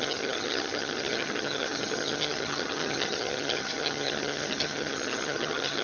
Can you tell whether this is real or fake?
fake